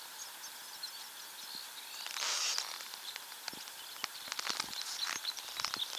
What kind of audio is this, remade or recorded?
recorded